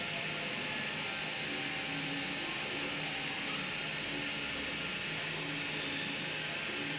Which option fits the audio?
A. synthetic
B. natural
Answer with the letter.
B